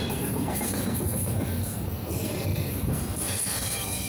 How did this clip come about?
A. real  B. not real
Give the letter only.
B